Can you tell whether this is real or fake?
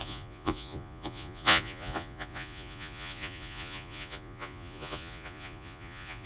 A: fake